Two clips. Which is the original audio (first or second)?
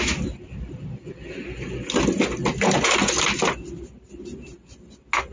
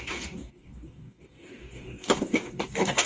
first